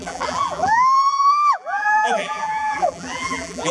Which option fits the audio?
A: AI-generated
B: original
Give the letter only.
A